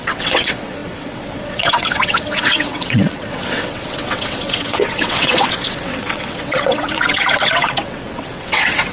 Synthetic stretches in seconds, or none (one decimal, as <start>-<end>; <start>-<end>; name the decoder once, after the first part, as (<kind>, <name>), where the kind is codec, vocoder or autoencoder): 0.0-8.9 (vocoder, WaveNeXt)